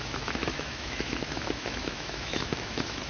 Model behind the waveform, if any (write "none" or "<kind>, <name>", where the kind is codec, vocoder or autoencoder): autoencoder, DAC-VAE